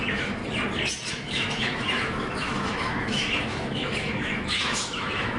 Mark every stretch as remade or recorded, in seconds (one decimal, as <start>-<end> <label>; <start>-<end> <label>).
0.0-0.4 remade; 0.4-1.1 recorded; 1.1-5.4 remade